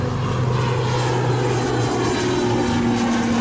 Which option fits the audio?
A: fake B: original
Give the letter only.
B